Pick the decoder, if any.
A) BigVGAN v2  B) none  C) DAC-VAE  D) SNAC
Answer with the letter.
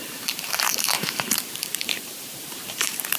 A